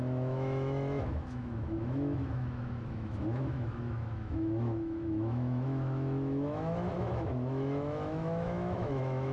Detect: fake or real fake